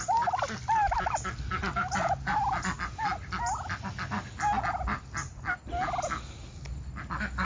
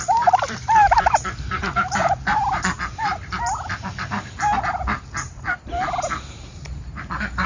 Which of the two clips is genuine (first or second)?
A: first